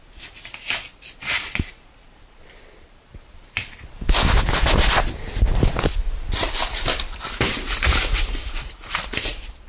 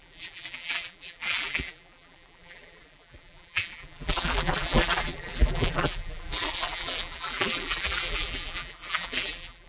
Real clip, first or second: first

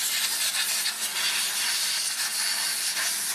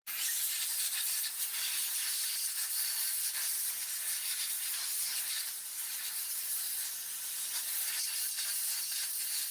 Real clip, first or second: first